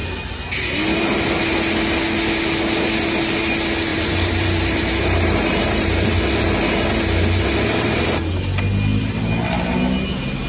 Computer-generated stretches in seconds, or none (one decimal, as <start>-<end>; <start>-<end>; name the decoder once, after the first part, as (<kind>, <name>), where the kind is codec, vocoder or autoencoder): 3.9-6.2 (vocoder, BigVGAN v2)